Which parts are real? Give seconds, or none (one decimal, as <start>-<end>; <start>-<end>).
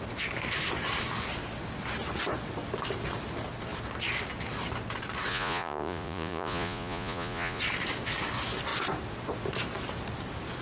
0.0-5.3; 7.6-10.6